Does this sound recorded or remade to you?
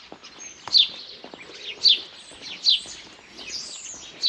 recorded